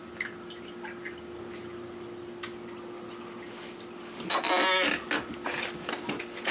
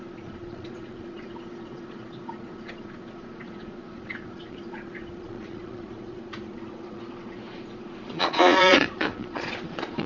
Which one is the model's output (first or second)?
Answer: second